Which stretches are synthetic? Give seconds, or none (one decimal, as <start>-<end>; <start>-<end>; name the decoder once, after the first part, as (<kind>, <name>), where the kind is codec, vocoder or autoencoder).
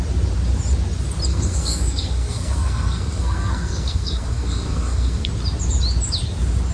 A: 1.3-5.3 (codec, SNAC)